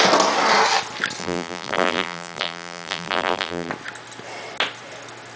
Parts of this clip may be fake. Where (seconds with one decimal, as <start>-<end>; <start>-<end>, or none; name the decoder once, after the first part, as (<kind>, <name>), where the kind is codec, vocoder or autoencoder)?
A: 1.2-3.7 (vocoder, BigVGAN v2)